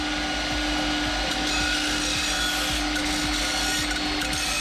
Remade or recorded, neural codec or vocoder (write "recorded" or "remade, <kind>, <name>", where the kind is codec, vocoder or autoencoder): recorded